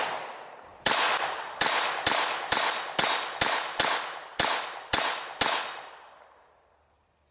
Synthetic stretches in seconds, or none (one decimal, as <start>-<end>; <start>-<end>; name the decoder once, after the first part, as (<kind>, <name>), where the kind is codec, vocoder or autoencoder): none